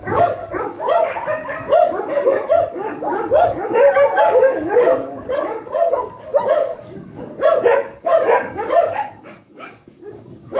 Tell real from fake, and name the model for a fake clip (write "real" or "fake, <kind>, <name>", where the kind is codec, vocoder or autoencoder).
fake, codec, DAC